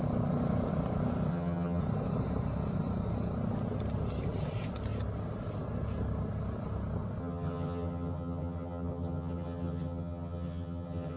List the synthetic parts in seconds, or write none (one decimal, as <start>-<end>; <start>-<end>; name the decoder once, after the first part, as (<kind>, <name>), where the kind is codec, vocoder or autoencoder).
1.3-1.8 (vocoder, HiFi-GAN); 7.2-11.2